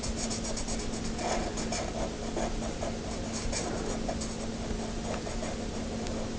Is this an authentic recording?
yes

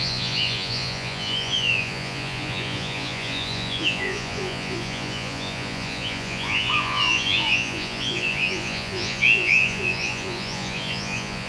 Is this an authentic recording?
no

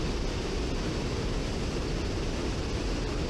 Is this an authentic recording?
yes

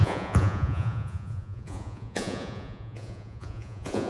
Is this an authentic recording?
no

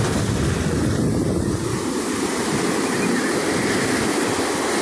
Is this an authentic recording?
yes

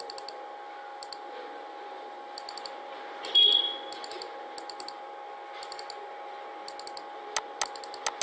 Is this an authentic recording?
yes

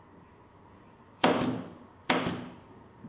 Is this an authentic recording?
yes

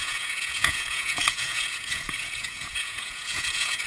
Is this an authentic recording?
no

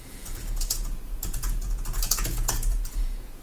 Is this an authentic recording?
no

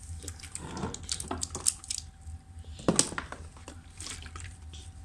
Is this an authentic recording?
yes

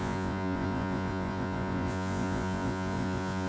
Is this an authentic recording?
no